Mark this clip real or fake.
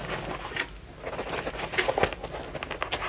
real